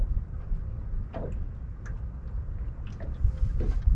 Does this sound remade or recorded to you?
recorded